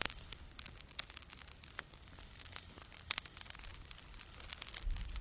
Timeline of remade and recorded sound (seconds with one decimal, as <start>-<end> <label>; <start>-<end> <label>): 0.0-5.2 recorded